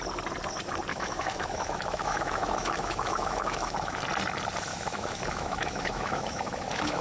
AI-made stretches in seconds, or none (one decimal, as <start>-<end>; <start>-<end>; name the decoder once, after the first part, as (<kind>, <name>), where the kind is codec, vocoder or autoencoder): 0.9-4.0 (autoencoder, DAC-VAE); 4.7-7.0